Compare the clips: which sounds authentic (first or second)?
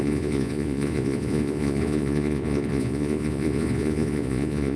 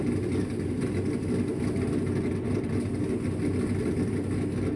second